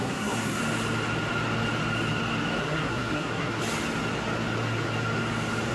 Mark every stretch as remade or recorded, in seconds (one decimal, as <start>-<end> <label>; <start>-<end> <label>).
0.0-0.6 remade; 0.6-2.6 recorded; 2.6-3.6 remade; 3.6-5.7 recorded